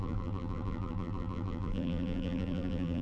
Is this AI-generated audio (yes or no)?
yes